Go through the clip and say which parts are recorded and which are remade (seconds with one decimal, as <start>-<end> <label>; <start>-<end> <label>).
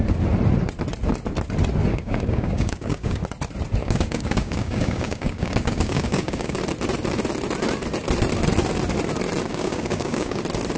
0.0-1.9 recorded; 1.9-3.2 remade; 3.2-3.8 recorded; 3.8-6.6 remade; 6.6-9.5 recorded; 9.5-10.4 remade; 10.4-10.8 recorded